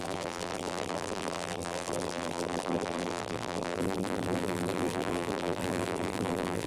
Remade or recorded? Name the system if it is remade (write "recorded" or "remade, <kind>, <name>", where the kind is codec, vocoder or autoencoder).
remade, vocoder, BigVGAN v2